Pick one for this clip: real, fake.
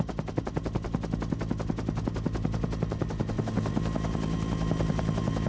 real